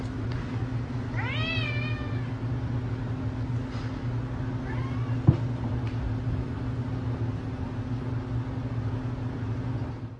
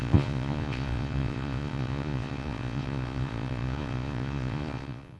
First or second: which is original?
first